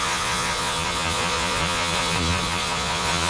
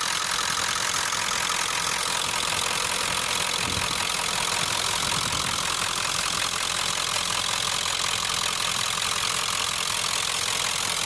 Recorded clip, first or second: second